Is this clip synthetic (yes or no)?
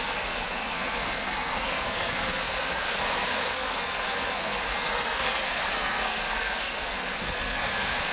yes